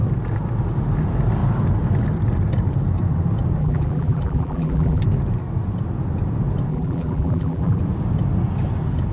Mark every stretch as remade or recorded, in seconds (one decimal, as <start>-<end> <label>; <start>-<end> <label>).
0.0-3.6 recorded; 3.6-5.0 remade; 5.0-6.7 recorded; 6.7-7.8 remade; 7.8-9.1 recorded